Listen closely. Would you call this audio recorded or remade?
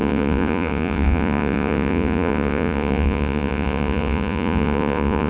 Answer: remade